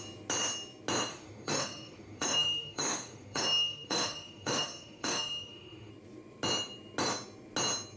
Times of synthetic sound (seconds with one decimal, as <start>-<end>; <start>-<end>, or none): 1.1-5.9